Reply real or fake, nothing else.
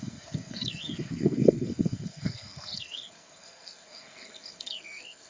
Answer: fake